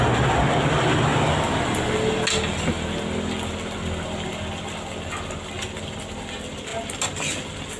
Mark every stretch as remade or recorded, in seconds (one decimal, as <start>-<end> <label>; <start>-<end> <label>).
0.0-7.8 recorded